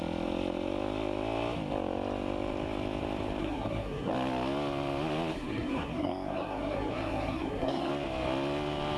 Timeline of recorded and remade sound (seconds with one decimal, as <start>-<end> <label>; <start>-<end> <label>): 0.0-3.4 recorded; 3.4-4.1 remade; 4.1-5.3 recorded; 5.3-7.9 remade; 7.9-9.0 recorded